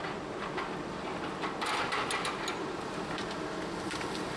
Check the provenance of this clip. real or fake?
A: fake